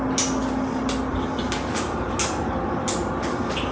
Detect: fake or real real